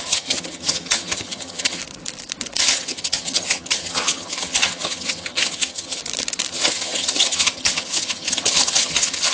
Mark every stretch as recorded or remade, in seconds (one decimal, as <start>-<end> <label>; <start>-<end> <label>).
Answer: 0.0-1.8 remade; 1.8-2.6 recorded; 2.6-6.0 remade; 6.0-6.5 recorded; 6.5-9.3 remade